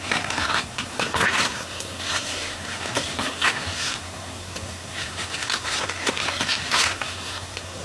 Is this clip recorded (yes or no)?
no